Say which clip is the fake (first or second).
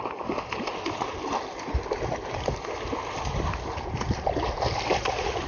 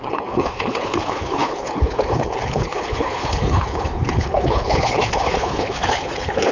second